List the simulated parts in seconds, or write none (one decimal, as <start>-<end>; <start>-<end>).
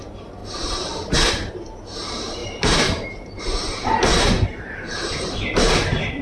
0.4-1.3; 2.4-3.4; 4.1-6.2